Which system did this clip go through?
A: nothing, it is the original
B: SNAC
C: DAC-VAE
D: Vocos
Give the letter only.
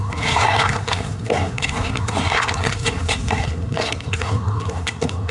B